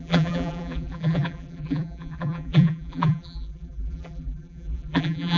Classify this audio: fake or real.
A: fake